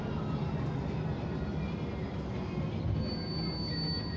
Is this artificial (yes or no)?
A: no